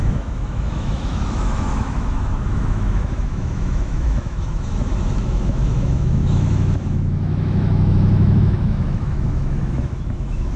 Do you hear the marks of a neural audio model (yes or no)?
yes